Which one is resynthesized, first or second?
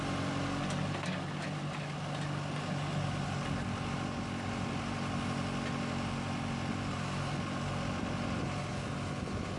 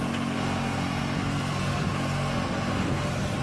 second